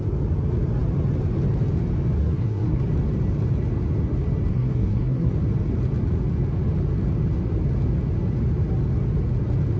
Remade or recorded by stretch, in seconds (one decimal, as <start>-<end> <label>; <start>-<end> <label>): 0.0-2.2 recorded; 2.2-2.8 remade; 2.8-4.5 recorded; 4.5-5.3 remade; 5.3-9.8 recorded